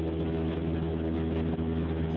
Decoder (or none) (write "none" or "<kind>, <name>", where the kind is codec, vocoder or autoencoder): none